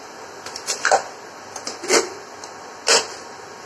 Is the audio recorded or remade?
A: recorded